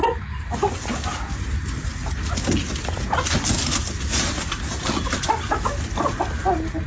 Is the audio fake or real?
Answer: real